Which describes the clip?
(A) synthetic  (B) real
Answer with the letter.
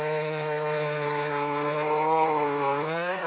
A